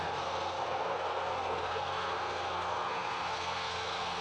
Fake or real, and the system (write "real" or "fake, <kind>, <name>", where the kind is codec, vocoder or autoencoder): fake, codec, SNAC